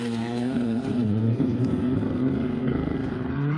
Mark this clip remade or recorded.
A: remade